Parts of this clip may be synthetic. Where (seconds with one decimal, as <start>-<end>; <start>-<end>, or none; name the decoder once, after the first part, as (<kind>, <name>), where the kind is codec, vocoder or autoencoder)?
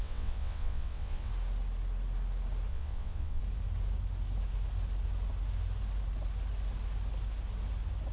0.0-1.3 (vocoder, WaveNeXt); 2.7-3.4